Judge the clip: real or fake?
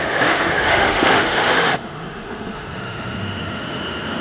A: fake